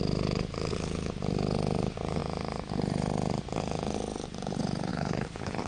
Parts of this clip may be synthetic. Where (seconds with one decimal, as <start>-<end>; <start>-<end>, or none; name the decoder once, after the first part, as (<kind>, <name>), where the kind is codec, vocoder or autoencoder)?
4.9-5.7 (codec, HILCodec)